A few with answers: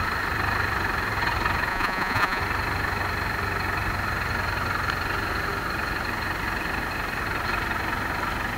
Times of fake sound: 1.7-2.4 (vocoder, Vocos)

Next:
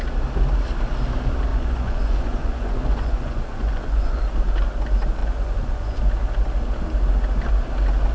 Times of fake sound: 1.5-4.2 (vocoder, Vocos); 5.2-6.0

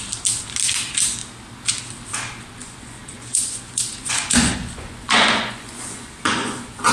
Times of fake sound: 2.6-6.9 (vocoder, Vocos)